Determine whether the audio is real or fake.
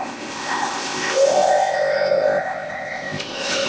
fake